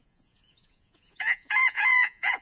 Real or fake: fake